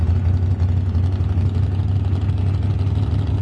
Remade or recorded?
recorded